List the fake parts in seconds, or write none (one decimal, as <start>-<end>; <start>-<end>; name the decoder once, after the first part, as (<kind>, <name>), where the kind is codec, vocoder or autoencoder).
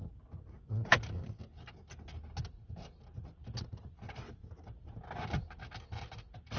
none